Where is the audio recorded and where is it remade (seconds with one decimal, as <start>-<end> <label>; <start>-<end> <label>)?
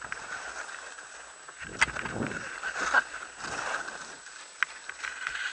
0.0-5.5 recorded